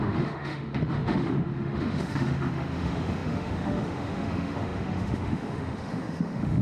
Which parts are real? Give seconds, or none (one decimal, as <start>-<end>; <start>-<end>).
none